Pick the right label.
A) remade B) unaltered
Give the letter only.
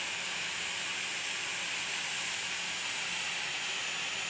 B